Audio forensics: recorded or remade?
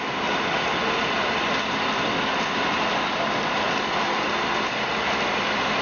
recorded